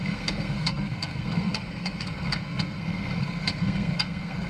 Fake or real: fake